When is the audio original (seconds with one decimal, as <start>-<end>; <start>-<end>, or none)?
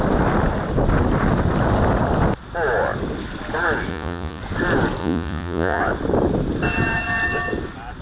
0.0-3.9; 4.4-5.0; 5.8-8.0